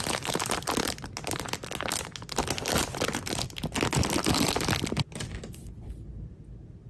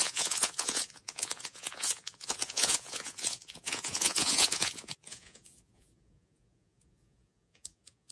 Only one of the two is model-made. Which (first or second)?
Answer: second